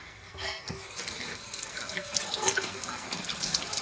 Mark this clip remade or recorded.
remade